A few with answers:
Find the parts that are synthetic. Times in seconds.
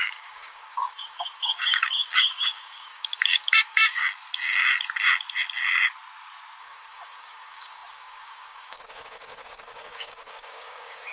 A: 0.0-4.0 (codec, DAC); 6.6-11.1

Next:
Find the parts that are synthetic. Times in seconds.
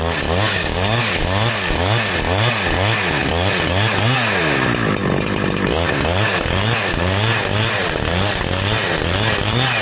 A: 0.5-1.1 (codec, DAC)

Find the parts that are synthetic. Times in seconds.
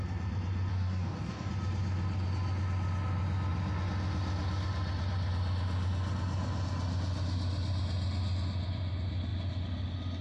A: 0.7-1.5 (codec, DAC)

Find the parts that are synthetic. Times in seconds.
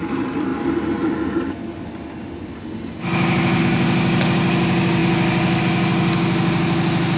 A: none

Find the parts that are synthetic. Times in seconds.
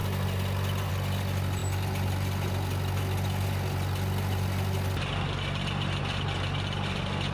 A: none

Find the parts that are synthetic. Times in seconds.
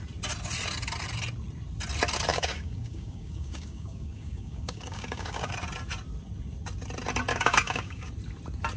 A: 2.3-5.5 (codec, DAC); 7.3-8.1